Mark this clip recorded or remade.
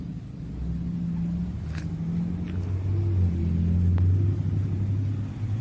recorded